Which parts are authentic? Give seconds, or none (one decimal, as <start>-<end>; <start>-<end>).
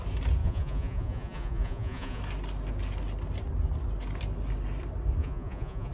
0.0-0.4; 2.2-5.2